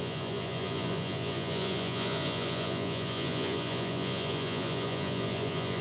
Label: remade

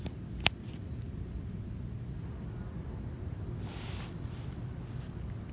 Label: recorded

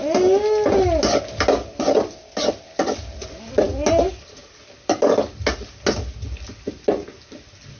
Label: recorded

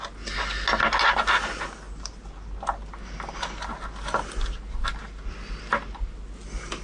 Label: recorded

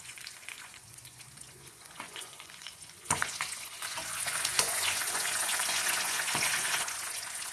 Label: remade